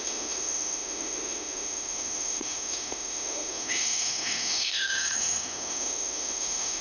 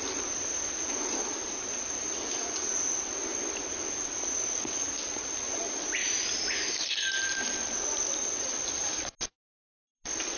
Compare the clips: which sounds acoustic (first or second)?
second